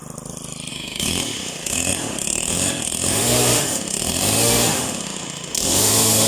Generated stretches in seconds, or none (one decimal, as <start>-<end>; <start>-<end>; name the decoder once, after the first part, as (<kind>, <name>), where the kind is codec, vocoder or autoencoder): 0.7-6.3 (autoencoder, DAC-VAE)